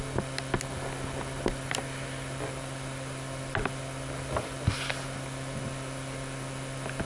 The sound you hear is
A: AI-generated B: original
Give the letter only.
B